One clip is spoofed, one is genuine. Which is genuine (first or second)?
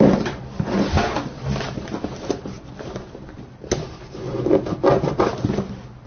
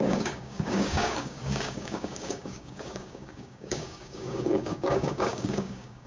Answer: first